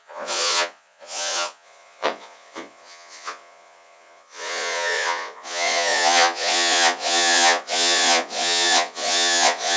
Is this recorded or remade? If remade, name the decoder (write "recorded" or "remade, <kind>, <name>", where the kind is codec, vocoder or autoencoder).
remade, vocoder, Vocos